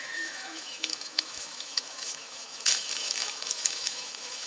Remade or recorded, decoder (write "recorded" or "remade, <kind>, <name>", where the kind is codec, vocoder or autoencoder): remade, autoencoder, DAC-VAE